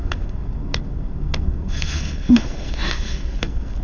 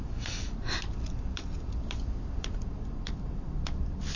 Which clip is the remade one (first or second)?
first